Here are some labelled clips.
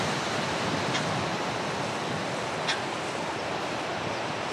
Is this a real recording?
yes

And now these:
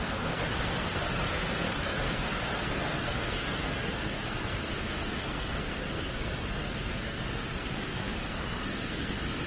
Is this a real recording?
no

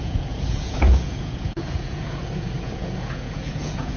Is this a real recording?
no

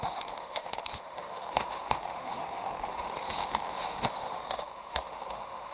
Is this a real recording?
no